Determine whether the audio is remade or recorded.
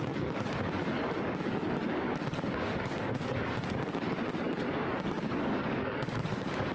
remade